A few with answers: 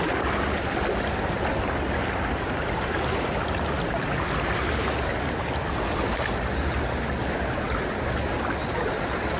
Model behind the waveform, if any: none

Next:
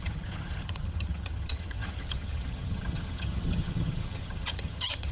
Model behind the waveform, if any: vocoder, HiFi-GAN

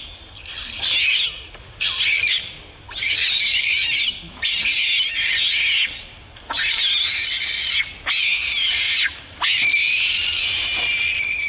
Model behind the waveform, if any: none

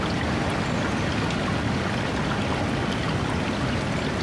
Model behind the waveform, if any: none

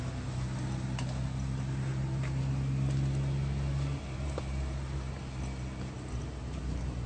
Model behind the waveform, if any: none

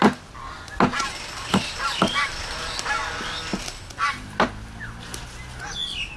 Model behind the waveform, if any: none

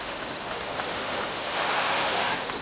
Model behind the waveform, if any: autoencoder, DAC-VAE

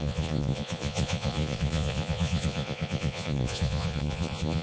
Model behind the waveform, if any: vocoder, Vocos